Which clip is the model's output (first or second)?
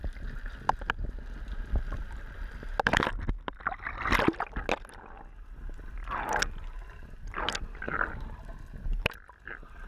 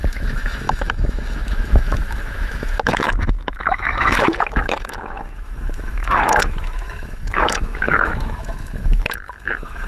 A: second